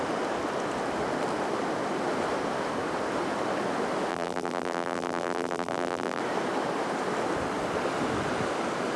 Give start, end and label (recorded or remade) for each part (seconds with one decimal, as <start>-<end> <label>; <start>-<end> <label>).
0.0-4.1 recorded; 4.1-6.2 remade; 6.2-9.0 recorded